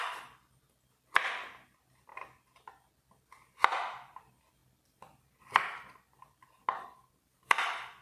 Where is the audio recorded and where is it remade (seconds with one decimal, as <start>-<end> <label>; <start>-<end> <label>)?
0.0-4.6 recorded; 4.6-8.0 remade